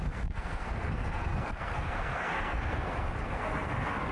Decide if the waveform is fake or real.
fake